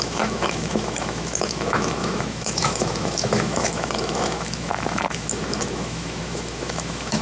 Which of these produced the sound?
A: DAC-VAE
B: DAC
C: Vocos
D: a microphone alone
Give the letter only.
A